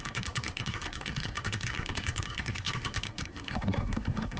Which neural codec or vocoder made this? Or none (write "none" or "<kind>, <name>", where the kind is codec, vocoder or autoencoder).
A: codec, SNAC